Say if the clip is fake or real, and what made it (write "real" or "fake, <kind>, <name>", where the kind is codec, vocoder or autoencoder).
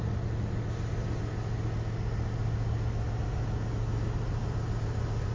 real